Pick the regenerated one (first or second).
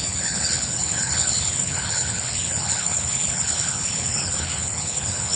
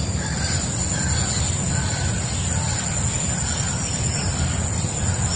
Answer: first